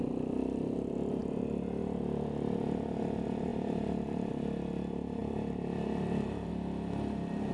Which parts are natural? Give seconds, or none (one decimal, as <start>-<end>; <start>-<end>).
0.0-3.5; 4.3-5.2; 6.5-7.5